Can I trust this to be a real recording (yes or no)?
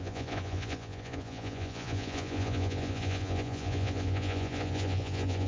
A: no